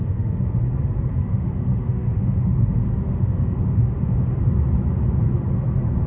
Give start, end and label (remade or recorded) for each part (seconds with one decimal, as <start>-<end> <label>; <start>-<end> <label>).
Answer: 0.0-0.6 remade; 0.6-1.3 recorded; 1.3-4.4 remade; 4.4-6.1 recorded